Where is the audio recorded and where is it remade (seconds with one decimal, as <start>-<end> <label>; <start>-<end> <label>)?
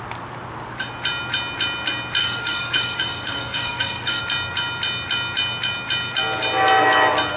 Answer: 0.0-2.2 recorded; 2.2-4.2 remade; 4.2-7.4 recorded